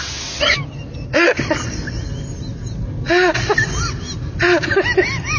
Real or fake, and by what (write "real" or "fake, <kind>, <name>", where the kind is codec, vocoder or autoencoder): real